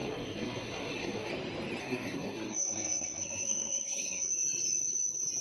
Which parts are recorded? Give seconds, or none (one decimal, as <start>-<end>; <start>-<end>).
1.3-1.8; 4.3-5.4

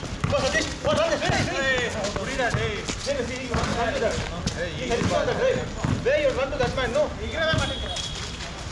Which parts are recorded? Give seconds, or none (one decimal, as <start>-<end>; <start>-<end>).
0.0-8.7

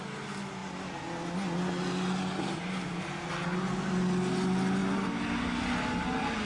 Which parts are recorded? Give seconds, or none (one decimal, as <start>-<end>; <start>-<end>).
0.0-6.5

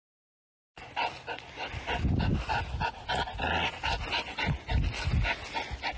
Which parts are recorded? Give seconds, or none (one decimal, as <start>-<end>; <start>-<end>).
0.0-6.0